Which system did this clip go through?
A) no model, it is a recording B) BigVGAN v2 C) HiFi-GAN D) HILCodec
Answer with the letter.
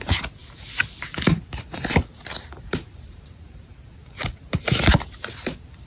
B